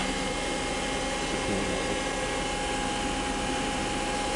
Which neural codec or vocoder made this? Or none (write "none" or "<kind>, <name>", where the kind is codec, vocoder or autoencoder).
none